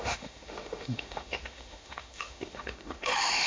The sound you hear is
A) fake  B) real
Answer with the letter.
A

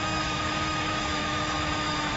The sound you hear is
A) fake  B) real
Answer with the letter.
A